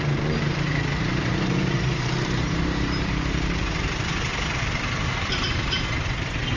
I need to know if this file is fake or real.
fake